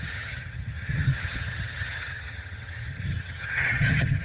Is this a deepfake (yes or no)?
yes